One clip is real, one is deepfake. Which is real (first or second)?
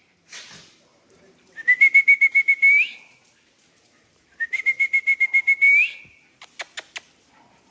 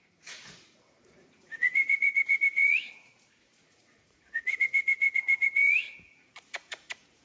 first